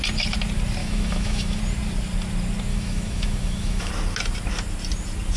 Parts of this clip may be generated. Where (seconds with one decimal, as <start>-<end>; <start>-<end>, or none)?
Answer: 0.8-1.6; 2.7-3.9